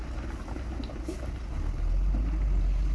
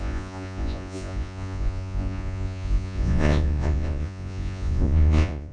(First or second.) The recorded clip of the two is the first